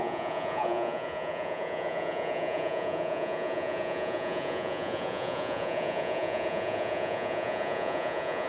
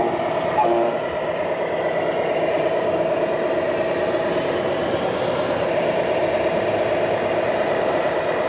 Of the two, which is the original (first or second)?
second